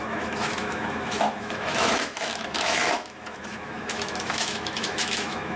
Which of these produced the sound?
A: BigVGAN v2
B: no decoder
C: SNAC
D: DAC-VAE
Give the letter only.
D